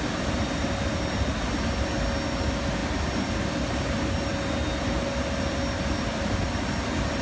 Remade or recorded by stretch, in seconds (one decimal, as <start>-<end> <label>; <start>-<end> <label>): 0.0-7.2 recorded